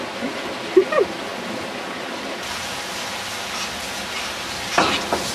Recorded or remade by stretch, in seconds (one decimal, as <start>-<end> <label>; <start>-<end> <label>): 0.0-5.3 recorded